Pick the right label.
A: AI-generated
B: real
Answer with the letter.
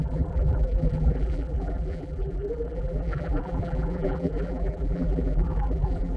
A